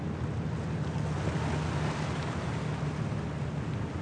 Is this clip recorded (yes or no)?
yes